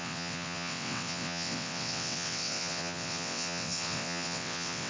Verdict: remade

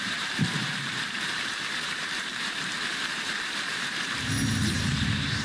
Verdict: remade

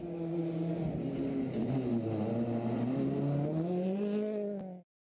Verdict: recorded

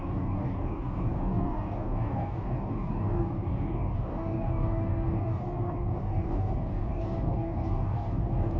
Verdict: remade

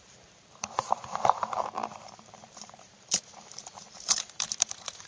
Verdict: remade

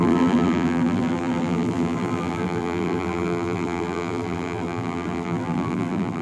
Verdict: remade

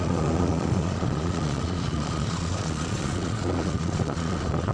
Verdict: remade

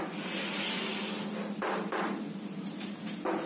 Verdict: recorded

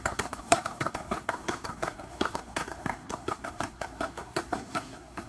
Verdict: remade